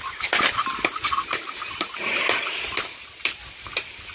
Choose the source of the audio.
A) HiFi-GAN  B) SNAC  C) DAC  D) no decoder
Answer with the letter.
D